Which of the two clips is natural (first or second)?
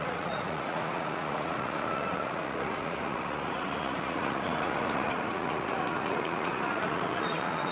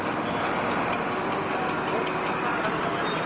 second